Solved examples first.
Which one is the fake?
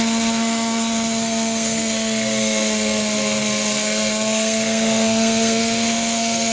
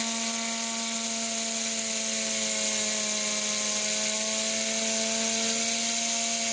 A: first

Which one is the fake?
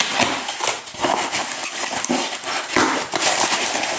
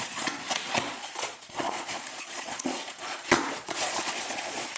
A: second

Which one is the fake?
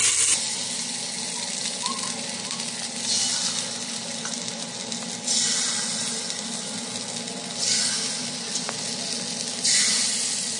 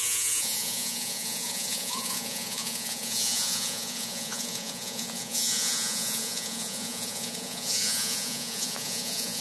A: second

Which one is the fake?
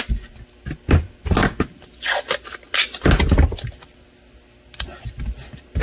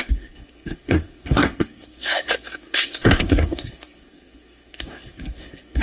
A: second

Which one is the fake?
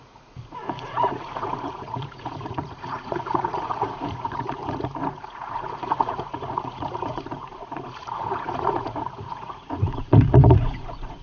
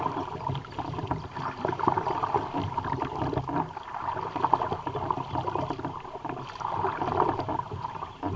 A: first